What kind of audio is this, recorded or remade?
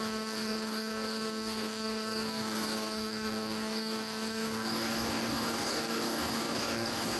remade